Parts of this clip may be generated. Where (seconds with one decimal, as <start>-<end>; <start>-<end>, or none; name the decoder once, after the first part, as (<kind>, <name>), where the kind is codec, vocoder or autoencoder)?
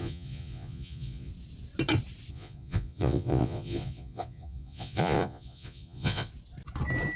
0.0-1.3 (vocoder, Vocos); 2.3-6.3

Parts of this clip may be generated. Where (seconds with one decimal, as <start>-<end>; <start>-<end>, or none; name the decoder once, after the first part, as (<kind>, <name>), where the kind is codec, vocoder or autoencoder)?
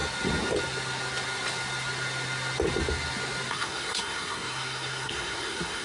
3.5-5.8 (codec, SNAC)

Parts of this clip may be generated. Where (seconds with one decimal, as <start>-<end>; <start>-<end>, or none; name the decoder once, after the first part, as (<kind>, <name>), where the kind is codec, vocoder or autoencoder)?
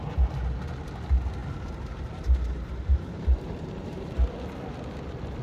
1.4-4.2 (vocoder, BigVGAN v2)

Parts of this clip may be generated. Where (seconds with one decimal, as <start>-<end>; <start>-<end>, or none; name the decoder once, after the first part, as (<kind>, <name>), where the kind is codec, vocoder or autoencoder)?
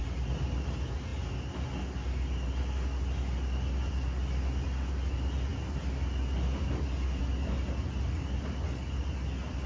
none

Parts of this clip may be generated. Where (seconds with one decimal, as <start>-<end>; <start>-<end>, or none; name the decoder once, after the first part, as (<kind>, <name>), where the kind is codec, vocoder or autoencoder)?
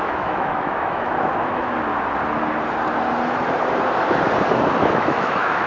0.0-1.9 (autoencoder, DAC-VAE); 4.8-5.7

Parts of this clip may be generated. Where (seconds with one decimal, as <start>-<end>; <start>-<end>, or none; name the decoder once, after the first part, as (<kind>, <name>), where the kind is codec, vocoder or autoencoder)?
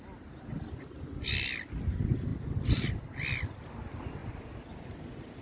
none